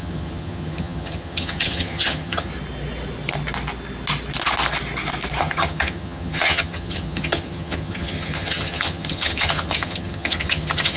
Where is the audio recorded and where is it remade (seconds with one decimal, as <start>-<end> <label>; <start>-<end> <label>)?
0.0-2.5 remade; 2.5-5.4 recorded; 5.4-11.0 remade